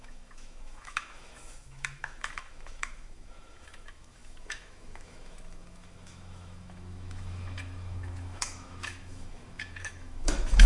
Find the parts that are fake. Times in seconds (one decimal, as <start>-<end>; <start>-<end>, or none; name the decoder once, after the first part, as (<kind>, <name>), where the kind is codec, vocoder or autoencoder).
0.0-10.7 (autoencoder, DAC-VAE)